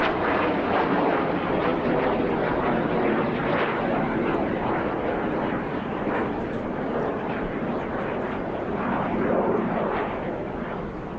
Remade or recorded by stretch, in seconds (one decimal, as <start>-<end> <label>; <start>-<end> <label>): 0.0-11.2 recorded